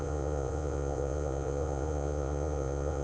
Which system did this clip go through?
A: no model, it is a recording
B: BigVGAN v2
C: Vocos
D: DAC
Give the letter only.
C